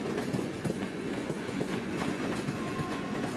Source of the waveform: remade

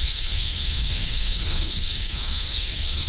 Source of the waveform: remade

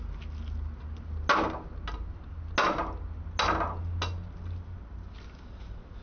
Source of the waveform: recorded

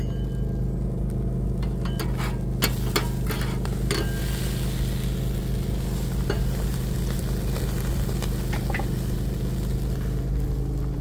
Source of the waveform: recorded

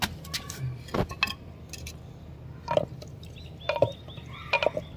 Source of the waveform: recorded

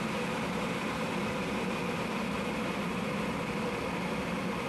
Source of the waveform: recorded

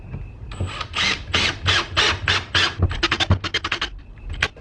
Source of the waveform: recorded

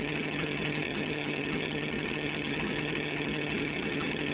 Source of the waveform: remade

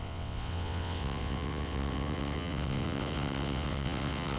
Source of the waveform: remade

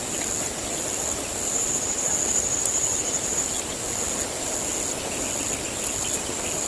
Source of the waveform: recorded